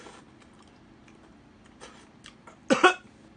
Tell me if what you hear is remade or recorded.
recorded